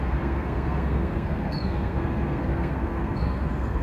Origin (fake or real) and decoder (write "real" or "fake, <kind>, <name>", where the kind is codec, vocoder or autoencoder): fake, codec, SNAC